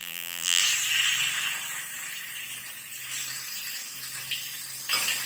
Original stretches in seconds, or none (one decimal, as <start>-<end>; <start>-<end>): 0.6-5.3